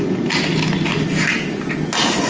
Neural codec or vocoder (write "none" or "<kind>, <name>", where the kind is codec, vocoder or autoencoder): none